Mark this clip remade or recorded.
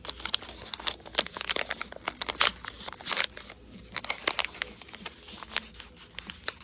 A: recorded